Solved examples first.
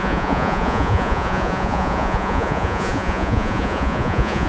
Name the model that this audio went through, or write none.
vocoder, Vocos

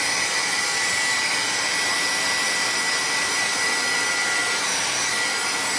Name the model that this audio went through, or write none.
none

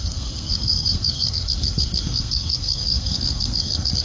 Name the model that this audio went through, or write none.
codec, SNAC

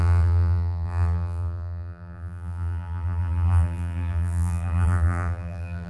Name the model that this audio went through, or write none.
vocoder, BigVGAN v2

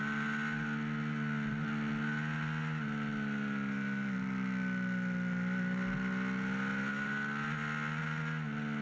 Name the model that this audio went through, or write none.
none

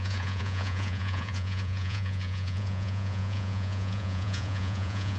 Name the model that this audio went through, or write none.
vocoder, Vocos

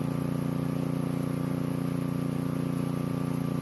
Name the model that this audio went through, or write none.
none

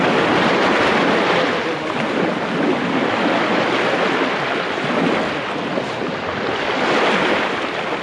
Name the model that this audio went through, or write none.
none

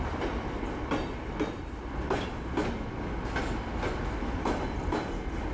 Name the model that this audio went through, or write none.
none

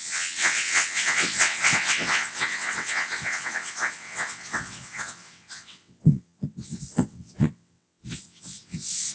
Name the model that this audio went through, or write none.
vocoder, WaveNeXt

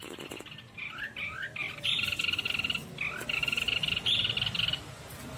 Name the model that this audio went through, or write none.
none